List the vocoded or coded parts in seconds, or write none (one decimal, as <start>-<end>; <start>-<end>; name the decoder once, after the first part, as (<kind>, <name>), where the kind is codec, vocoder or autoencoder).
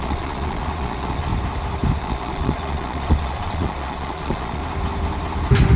0.0-1.3 (vocoder, Vocos); 2.0-4.6